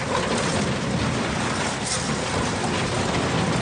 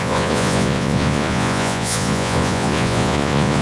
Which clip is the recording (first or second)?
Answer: first